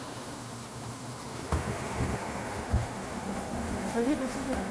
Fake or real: fake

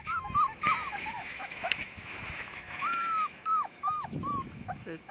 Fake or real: fake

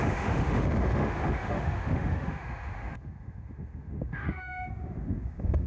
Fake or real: fake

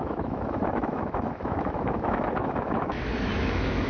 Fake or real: fake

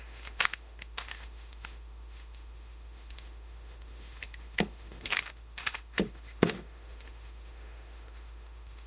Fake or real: fake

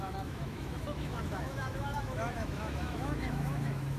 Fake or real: fake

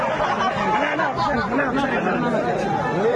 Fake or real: real